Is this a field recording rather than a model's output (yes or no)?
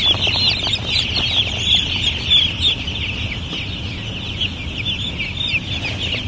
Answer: yes